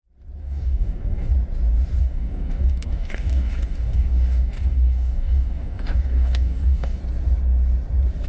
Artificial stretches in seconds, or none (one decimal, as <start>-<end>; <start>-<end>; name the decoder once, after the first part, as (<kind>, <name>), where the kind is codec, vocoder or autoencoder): 0.4-1.3 (codec, DAC); 2.0-7.0